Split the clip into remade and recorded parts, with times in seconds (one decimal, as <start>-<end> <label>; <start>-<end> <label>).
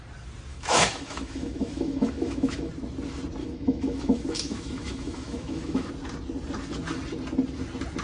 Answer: 0.0-0.5 recorded; 0.5-2.7 remade; 2.7-3.4 recorded; 3.4-5.9 remade; 5.9-8.0 recorded